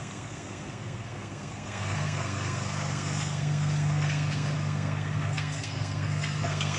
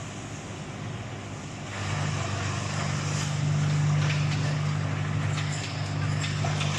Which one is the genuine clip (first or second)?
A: second